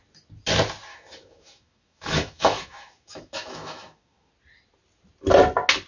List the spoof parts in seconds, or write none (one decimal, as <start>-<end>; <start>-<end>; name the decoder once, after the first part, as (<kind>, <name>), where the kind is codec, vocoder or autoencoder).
0.9-4.3 (autoencoder, DAC-VAE)